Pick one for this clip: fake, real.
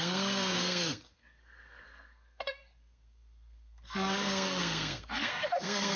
fake